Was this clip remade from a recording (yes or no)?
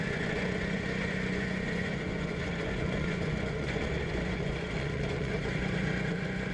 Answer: yes